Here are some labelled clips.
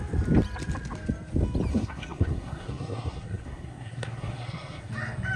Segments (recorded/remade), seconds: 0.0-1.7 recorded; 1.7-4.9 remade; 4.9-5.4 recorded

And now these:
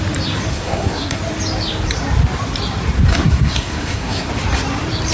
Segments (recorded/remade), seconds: 0.0-0.5 recorded; 0.5-1.2 remade; 1.2-3.1 recorded; 3.1-4.3 remade; 4.3-5.1 recorded

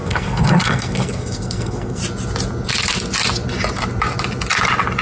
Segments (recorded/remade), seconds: 0.0-2.0 remade; 2.0-5.0 recorded

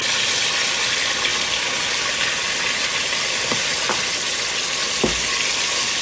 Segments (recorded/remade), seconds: 0.0-6.0 recorded

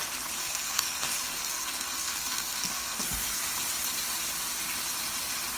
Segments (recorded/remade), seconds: 0.0-0.4 recorded; 0.4-3.4 remade; 3.4-5.6 recorded

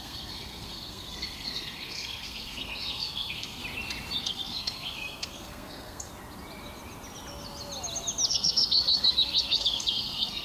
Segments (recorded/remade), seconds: 0.0-3.6 remade; 3.6-4.2 recorded; 4.2-6.1 remade; 6.1-8.3 recorded; 8.3-10.4 remade